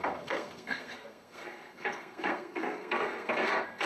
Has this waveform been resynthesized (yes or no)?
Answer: yes